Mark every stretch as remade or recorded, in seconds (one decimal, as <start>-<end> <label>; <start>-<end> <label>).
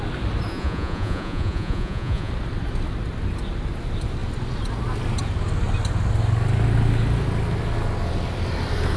0.0-0.5 recorded; 0.5-2.3 remade; 2.3-9.0 recorded